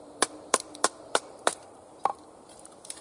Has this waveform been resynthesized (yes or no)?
yes